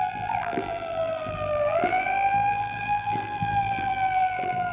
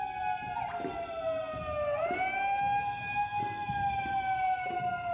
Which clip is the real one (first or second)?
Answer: second